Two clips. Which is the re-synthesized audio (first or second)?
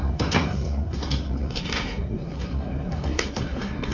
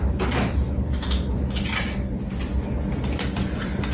first